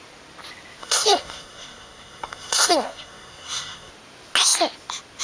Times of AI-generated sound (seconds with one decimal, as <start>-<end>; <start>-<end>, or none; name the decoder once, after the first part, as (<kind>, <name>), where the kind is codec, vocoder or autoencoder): 0.8-3.9 (codec, SNAC)